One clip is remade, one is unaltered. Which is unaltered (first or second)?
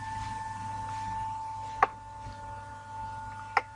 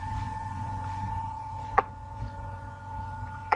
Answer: first